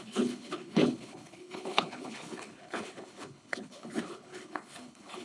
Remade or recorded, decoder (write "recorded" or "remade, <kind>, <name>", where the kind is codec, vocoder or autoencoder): remade, codec, HILCodec